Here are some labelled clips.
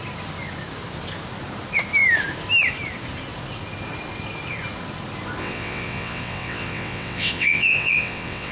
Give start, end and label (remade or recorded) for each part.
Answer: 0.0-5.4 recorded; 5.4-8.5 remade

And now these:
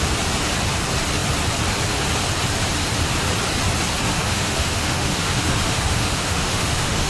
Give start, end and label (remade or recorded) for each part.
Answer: 0.0-4.1 recorded; 4.1-7.1 remade